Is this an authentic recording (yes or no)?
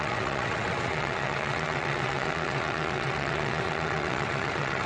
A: no